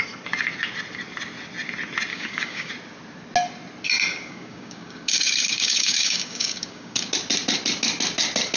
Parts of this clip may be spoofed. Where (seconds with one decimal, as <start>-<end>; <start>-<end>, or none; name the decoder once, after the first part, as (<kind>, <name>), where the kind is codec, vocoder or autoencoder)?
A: 2.1-2.7 (codec, DAC); 4.1-7.1